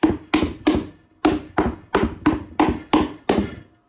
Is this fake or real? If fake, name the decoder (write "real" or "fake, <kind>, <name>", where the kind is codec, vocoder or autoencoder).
real